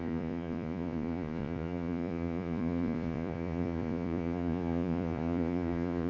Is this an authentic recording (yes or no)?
no